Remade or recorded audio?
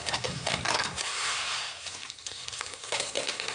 remade